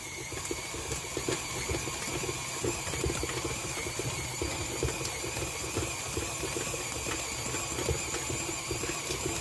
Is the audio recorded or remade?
remade